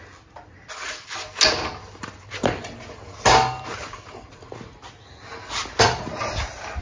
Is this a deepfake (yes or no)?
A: no